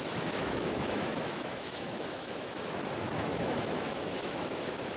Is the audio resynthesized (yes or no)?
yes